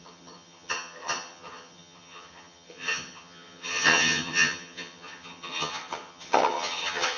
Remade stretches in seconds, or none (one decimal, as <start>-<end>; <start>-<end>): 0.0-7.2